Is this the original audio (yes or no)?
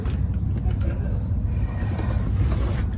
yes